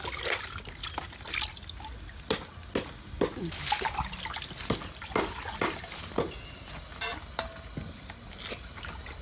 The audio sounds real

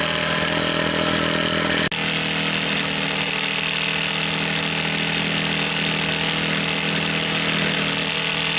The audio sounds real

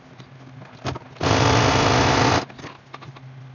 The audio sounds real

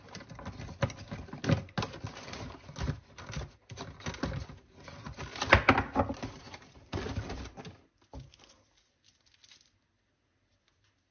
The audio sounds real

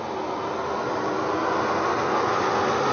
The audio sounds real